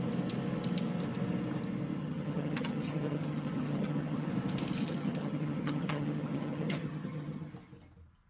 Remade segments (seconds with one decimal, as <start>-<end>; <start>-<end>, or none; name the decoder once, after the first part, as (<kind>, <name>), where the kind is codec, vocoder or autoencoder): 2.0-4.3 (vocoder, HiFi-GAN); 4.8-7.5